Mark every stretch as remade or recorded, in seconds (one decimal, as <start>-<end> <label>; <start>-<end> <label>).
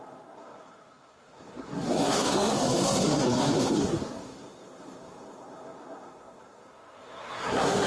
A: 0.0-7.9 remade